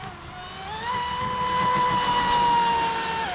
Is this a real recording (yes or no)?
yes